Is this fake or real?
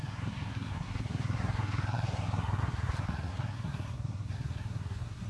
fake